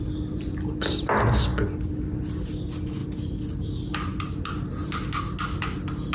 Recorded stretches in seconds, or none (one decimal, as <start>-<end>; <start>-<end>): 0.0-6.1